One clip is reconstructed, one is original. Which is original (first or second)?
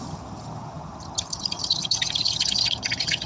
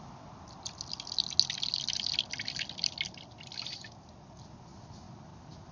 second